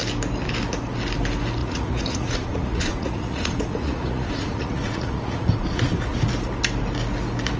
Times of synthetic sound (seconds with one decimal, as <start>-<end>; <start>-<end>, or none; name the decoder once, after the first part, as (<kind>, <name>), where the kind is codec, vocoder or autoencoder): 1.6-6.2 (vocoder, Vocos)